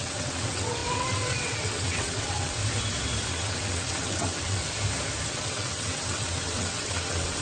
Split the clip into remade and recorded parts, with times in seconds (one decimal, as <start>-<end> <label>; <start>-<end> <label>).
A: 0.0-2.6 remade; 2.6-3.3 recorded; 3.3-4.6 remade; 4.6-5.3 recorded; 5.3-7.4 remade